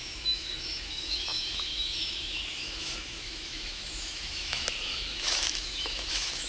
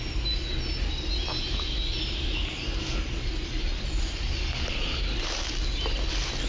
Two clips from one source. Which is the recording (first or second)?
second